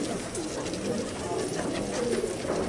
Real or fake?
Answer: real